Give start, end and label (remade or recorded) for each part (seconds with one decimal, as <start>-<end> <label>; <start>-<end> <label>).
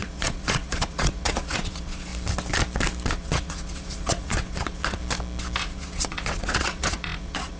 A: 0.0-2.1 remade; 2.1-3.1 recorded; 3.1-5.0 remade; 5.0-5.6 recorded; 5.6-7.6 remade